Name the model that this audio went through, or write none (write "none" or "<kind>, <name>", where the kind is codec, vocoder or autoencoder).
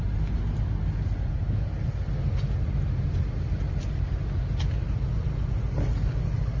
none